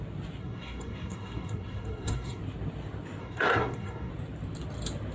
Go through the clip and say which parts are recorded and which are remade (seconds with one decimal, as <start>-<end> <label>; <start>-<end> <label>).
0.0-0.4 recorded; 0.4-2.4 remade; 2.4-3.2 recorded; 3.2-4.1 remade; 4.1-5.1 recorded